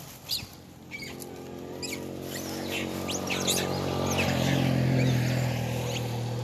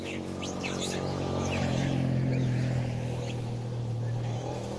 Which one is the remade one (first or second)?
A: second